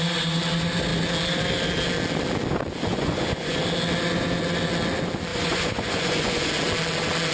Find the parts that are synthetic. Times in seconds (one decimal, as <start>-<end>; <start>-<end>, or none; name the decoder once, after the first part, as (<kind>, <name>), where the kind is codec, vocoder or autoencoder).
2.9-3.6 (vocoder, Vocos); 5.3-6.5